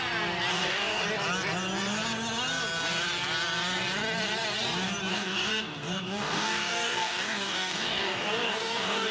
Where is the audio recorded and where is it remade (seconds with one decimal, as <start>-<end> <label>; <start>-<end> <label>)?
0.0-0.5 recorded; 0.5-1.0 remade; 1.0-5.1 recorded; 5.1-9.1 remade